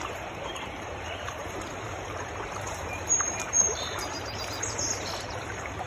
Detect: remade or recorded remade